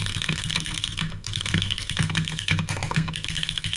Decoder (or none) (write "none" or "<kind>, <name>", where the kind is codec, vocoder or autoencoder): codec, SNAC